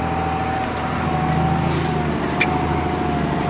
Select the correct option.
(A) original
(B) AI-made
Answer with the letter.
A